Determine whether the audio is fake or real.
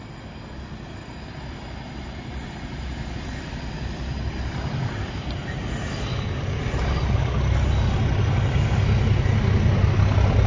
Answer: real